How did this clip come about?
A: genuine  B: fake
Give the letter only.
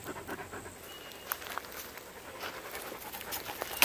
A